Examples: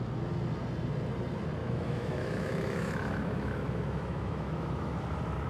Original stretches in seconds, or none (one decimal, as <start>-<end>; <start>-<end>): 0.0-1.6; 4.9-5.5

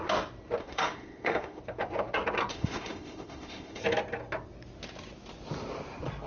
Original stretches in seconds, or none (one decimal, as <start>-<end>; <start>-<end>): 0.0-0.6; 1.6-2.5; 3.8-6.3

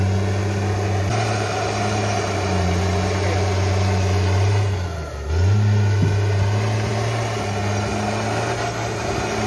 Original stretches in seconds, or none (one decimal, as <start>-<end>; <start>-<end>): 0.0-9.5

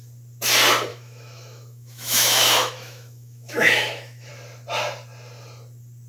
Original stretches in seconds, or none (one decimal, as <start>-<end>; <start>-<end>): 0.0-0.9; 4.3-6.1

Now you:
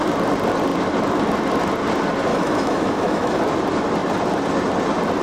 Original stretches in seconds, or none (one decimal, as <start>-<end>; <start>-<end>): 0.0-2.3; 3.4-5.2

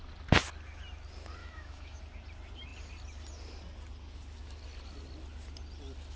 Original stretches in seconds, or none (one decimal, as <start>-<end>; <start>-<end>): 0.0-1.4; 2.0-6.2

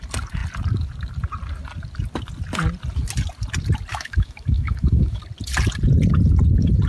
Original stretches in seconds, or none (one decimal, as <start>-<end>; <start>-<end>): 0.0-3.9; 5.2-6.9